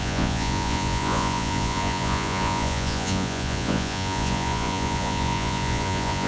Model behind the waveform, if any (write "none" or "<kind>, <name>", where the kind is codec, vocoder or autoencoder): vocoder, Vocos